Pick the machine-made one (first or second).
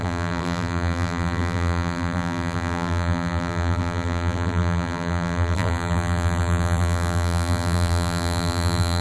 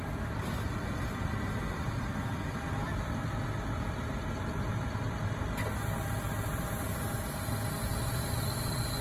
first